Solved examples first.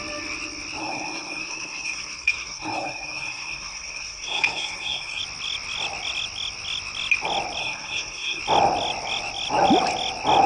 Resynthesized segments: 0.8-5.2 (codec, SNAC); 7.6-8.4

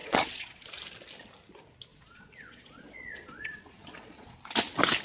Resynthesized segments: 0.0-0.7 (vocoder, Vocos); 1.9-4.5

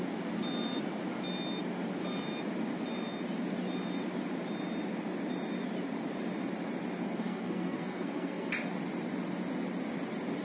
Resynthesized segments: 7.0-8.5 (codec, SNAC)

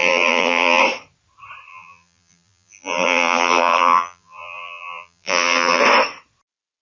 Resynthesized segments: 0.0-0.8 (vocoder, BigVGAN v2); 1.7-5.8

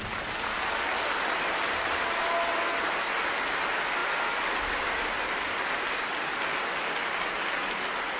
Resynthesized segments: none

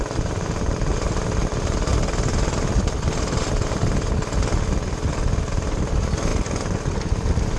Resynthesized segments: 0.0-1.9 (vocoder, BigVGAN v2); 5.5-7.6

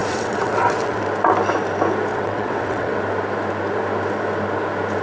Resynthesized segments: 0.0-1.0 (vocoder, WaveNeXt); 2.1-3.0